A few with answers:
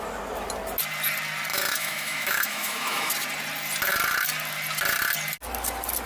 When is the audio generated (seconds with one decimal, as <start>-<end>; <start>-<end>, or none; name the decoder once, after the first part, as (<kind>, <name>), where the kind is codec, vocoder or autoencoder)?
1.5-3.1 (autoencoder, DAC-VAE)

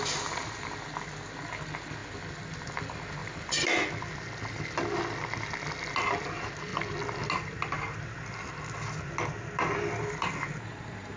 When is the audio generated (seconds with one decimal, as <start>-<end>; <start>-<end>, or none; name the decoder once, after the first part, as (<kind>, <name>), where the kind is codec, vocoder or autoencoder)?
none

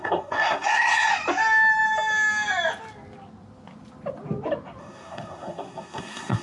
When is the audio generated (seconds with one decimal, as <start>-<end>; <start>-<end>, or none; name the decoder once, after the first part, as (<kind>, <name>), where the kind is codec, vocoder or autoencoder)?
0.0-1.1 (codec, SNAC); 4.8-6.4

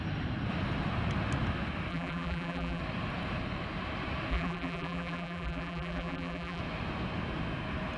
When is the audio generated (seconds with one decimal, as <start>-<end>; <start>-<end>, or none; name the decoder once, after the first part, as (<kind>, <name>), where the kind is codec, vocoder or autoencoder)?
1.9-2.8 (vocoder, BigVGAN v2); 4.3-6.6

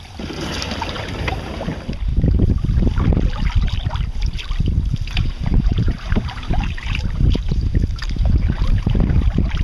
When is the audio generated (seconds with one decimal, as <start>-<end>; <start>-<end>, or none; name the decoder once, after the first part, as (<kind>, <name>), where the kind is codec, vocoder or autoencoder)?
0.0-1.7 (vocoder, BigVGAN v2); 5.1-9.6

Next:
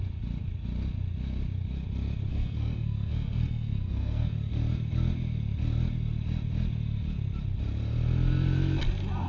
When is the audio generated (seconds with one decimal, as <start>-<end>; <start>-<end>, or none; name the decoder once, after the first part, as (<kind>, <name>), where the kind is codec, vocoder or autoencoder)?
2.3-4.5 (codec, SNAC)

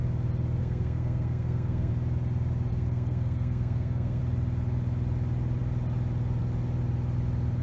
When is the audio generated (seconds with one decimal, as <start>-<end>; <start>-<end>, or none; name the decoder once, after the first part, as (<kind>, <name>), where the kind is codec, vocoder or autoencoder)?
0.6-1.9 (codec, SNAC); 2.7-4.2